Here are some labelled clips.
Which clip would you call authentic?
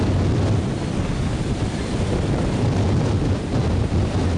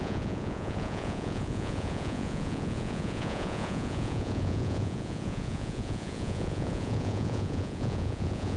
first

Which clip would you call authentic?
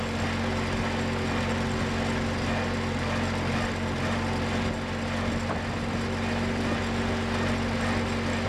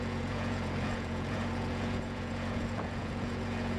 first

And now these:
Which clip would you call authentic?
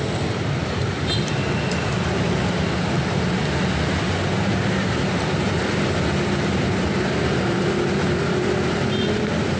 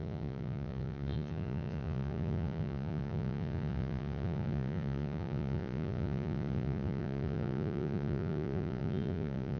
first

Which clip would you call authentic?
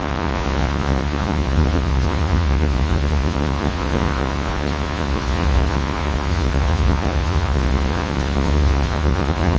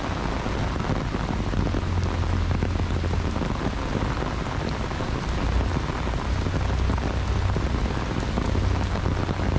second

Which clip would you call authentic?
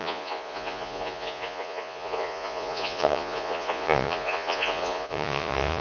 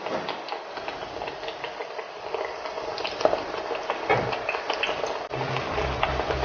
second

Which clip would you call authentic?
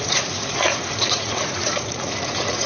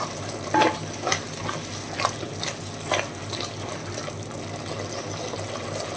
second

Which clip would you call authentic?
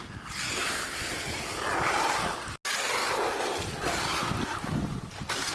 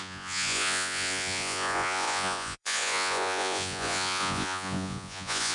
first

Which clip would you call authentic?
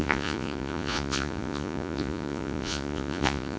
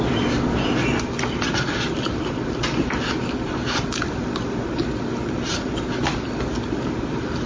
second